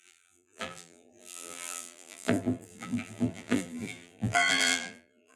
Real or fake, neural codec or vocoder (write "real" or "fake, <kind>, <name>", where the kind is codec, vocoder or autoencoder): fake, vocoder, BigVGAN v2